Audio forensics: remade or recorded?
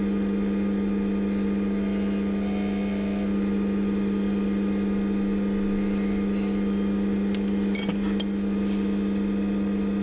recorded